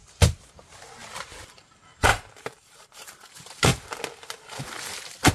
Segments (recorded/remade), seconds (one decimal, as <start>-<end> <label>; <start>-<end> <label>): 0.0-2.1 recorded; 2.1-3.3 remade; 3.3-5.3 recorded